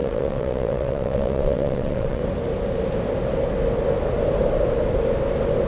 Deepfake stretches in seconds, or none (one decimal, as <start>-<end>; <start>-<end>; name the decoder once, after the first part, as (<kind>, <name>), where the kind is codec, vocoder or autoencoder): 0.0-2.2 (vocoder, WaveNeXt)